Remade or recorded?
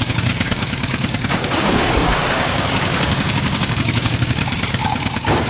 remade